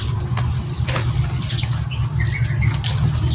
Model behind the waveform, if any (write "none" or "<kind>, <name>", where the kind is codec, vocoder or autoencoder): none